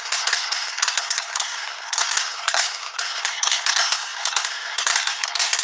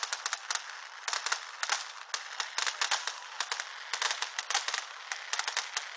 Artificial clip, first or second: first